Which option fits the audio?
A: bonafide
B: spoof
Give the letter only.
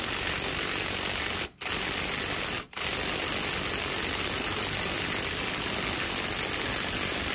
A